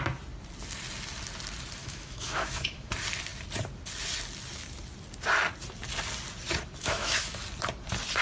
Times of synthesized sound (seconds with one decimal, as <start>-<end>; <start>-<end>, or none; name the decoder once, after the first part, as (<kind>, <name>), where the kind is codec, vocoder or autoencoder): 1.8-2.9 (autoencoder, DAC-VAE); 6.8-7.4